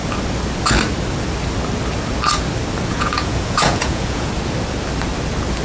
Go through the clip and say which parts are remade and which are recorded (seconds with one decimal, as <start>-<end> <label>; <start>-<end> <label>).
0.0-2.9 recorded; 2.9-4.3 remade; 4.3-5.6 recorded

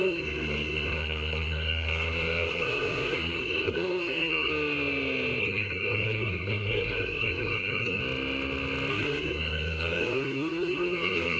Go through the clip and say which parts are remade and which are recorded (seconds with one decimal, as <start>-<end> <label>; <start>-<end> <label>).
0.0-4.5 remade; 4.5-5.4 recorded; 5.4-8.0 remade; 8.0-8.9 recorded; 8.9-11.4 remade

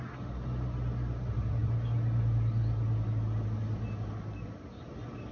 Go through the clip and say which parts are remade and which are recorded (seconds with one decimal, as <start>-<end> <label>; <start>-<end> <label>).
0.0-5.3 recorded

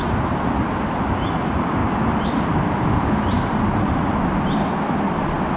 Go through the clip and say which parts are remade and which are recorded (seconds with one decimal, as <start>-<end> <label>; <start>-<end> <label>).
0.0-5.6 recorded